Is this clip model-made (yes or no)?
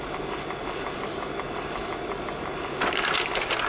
no